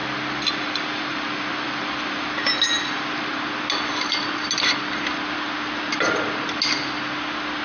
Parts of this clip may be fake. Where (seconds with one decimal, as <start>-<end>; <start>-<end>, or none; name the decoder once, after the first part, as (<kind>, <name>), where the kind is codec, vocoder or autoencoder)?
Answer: none